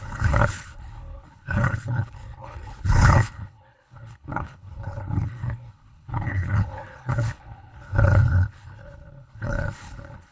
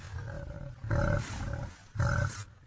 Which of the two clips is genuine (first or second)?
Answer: second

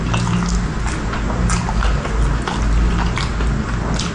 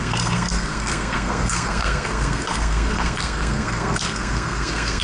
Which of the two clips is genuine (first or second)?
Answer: first